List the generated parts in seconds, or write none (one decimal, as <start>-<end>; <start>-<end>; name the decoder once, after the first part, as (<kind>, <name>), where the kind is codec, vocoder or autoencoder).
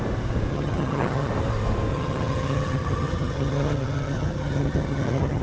0.5-1.3 (vocoder, HiFi-GAN); 1.9-5.4